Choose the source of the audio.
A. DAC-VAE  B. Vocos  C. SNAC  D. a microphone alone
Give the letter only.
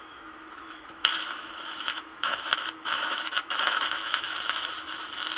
A